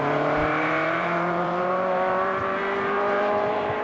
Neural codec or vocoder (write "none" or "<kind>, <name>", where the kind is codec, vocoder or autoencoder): vocoder, BigVGAN v2